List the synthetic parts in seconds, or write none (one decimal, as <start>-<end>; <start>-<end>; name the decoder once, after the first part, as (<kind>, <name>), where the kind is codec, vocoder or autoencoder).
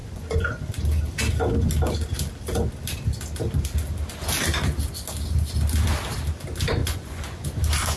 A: 0.0-0.5 (vocoder, Vocos); 6.8-7.6